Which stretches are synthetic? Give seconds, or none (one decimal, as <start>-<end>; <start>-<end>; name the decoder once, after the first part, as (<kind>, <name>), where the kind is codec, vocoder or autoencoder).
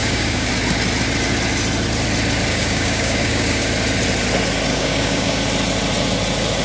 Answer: 0.0-0.5 (codec, DAC); 2.5-3.7; 4.7-5.4